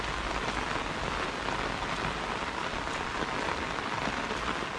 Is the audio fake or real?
real